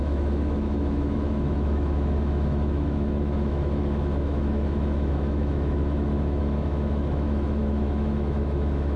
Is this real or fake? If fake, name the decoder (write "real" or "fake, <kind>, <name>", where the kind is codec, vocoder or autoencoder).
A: fake, autoencoder, DAC-VAE